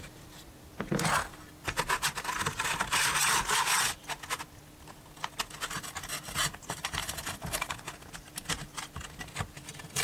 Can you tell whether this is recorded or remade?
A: recorded